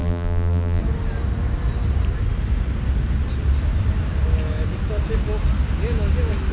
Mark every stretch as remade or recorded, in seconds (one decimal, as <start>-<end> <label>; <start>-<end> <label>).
0.0-0.8 remade; 0.8-6.5 recorded

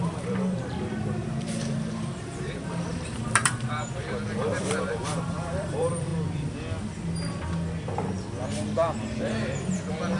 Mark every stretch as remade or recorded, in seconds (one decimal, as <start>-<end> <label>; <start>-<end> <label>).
0.0-6.1 remade; 6.1-10.2 recorded